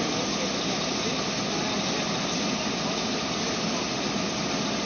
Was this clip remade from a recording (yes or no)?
no